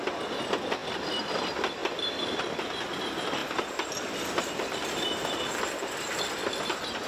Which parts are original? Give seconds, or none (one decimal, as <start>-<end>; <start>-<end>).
0.0-3.4; 5.8-7.1